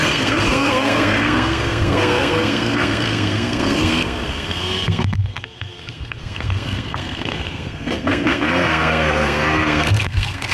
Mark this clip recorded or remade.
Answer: remade